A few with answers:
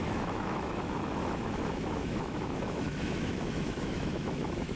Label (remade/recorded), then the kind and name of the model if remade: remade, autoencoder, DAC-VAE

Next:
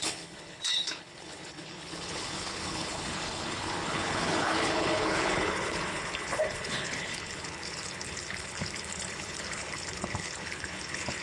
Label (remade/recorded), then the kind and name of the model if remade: remade, codec, HILCodec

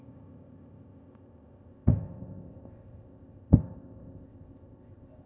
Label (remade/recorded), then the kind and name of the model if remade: remade, codec, ZipCodec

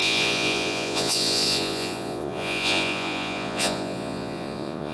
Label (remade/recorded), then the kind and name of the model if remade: remade, vocoder, Vocos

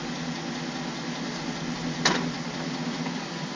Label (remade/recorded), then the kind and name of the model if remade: recorded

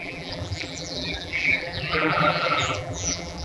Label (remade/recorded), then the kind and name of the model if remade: remade, vocoder, BigVGAN v2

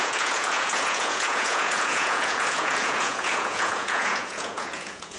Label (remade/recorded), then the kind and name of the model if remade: remade, vocoder, Vocos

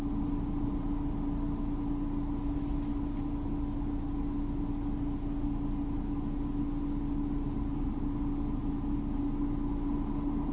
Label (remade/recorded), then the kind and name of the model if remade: recorded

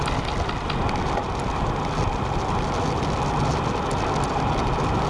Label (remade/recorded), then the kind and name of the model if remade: recorded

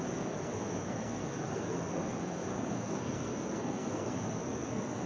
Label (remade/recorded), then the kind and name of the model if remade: remade, codec, SNAC